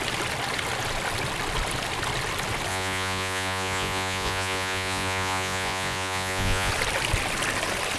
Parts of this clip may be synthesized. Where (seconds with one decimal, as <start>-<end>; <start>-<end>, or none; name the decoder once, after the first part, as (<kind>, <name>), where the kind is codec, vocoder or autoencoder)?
2.7-6.7 (vocoder, Vocos)